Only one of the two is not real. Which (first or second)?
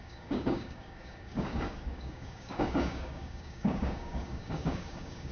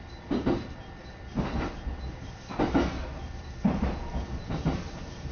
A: first